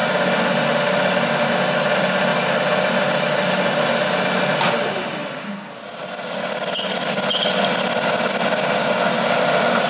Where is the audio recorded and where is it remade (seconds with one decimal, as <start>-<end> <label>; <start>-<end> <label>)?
0.0-9.9 recorded